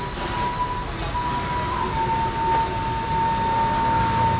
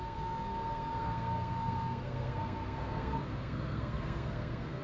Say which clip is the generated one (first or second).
second